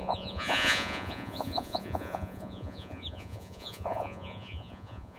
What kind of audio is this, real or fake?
fake